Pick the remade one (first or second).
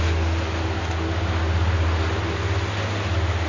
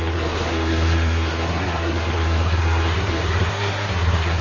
second